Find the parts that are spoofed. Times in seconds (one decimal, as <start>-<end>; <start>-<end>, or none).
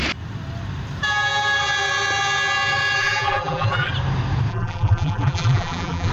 3.0-3.9; 4.5-6.1